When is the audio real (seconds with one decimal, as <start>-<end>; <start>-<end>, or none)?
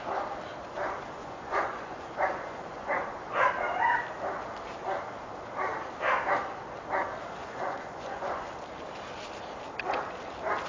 0.0-1.2; 3.5-7.4; 8.5-10.7